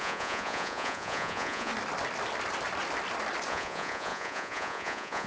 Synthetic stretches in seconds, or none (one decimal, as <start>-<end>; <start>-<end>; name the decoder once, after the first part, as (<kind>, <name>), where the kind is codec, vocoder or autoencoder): 0.0-1.7 (vocoder, Vocos); 3.5-5.3